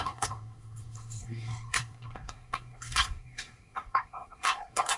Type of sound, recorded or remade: remade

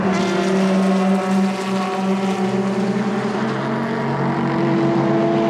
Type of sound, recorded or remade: recorded